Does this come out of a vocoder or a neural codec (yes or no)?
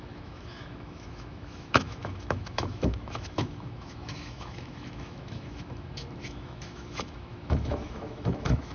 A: yes